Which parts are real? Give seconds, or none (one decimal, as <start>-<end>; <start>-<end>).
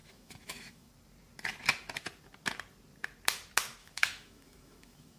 0.9-3.8